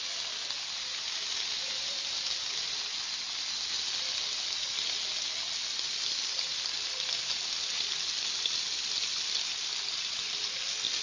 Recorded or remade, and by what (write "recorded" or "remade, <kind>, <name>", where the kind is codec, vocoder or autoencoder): recorded